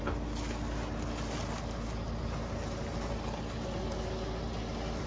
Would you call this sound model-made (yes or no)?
no